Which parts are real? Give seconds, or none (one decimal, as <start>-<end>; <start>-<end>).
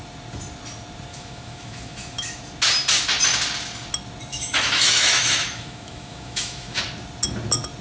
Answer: 0.0-1.1; 2.4-4.3; 6.8-7.8